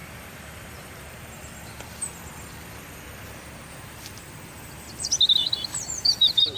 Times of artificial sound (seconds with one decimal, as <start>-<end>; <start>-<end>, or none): 0.0-1.2; 5.4-6.6